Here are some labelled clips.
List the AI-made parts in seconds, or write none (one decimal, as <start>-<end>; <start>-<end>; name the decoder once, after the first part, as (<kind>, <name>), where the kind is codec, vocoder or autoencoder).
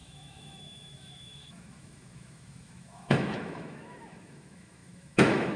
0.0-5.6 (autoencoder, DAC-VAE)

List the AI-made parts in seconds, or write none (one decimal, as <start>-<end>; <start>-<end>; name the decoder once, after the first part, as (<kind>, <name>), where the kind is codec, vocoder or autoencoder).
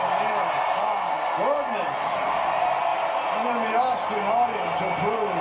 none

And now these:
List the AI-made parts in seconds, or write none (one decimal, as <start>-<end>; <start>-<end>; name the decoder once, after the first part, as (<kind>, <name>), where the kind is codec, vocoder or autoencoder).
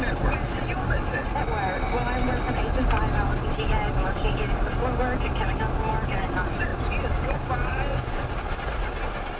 none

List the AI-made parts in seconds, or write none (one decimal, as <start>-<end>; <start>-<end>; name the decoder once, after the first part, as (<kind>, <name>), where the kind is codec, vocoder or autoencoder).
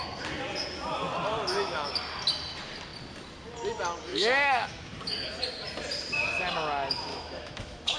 1.3-1.9 (autoencoder, DAC-VAE); 4.1-5.0; 7.1-8.0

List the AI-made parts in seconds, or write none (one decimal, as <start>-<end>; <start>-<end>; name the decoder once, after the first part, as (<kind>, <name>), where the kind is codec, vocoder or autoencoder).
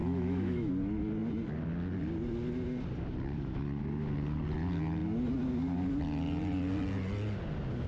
0.0-0.7 (autoencoder, DAC-VAE)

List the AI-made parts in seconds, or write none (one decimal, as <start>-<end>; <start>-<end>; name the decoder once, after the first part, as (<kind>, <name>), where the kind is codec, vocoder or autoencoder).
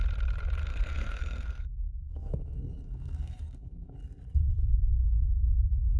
0.7-4.0 (codec, SNAC)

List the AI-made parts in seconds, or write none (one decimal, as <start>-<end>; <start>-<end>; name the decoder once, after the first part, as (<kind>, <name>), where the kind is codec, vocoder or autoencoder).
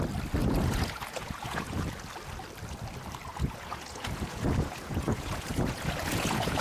0.4-1.9 (vocoder, Vocos); 3.3-6.6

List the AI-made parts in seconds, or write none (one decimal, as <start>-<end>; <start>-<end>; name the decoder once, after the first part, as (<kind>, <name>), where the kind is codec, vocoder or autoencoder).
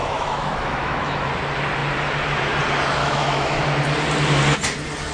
0.0-1.3 (autoencoder, DAC-VAE); 3.0-3.6